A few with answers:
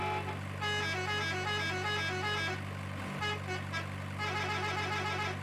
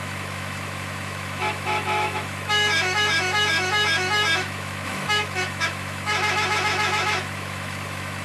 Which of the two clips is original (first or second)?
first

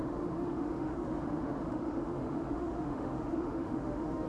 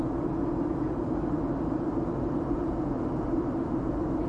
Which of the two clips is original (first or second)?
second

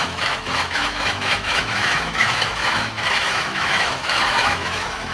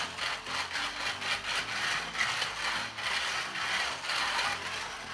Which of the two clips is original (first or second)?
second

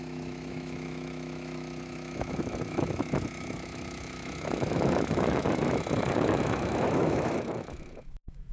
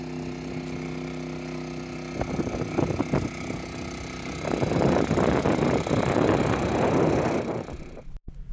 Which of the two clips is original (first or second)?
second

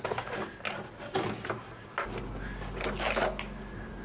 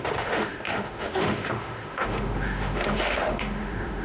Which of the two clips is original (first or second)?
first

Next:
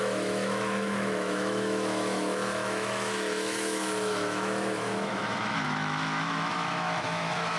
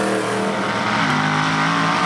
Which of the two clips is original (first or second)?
second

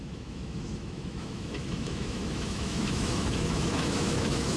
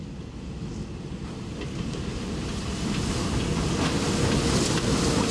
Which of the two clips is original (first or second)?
second